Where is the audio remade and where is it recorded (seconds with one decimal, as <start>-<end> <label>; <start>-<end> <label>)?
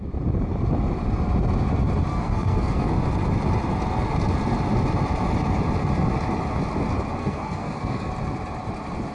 0.0-2.1 recorded; 2.1-2.9 remade; 2.9-7.2 recorded; 7.2-8.1 remade; 8.1-9.1 recorded